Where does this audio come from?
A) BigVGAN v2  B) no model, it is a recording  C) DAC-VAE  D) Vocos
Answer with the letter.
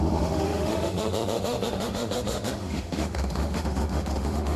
C